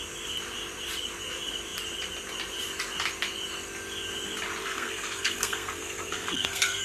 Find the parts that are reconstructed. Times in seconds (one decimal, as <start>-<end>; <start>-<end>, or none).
4.6-6.8